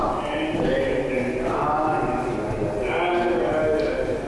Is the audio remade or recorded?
recorded